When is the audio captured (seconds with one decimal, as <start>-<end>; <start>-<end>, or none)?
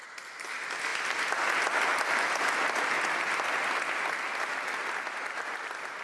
0.0-6.0